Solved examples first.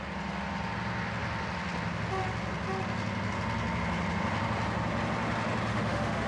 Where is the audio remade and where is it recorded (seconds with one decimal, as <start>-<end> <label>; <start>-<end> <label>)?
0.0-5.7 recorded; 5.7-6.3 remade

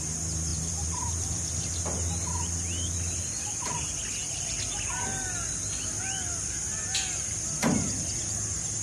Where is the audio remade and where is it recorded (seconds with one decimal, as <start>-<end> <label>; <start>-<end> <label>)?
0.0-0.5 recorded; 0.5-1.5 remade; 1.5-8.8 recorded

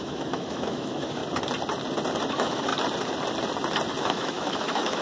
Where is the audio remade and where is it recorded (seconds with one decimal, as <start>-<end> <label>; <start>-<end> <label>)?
0.0-1.2 remade; 1.2-2.3 recorded; 2.3-2.7 remade; 2.7-4.0 recorded; 4.0-5.0 remade

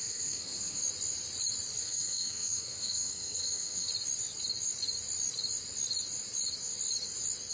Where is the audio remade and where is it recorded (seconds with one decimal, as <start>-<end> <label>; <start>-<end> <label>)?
0.0-0.8 remade; 0.8-1.8 recorded; 1.8-3.9 remade; 3.9-7.5 recorded

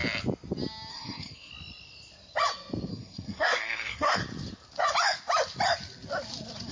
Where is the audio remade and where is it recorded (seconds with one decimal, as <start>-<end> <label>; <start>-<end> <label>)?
0.0-0.9 recorded; 0.9-1.5 remade; 1.5-2.9 recorded; 2.9-4.2 remade; 4.2-6.7 recorded